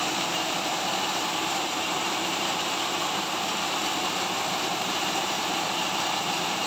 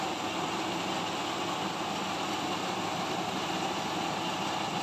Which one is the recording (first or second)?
second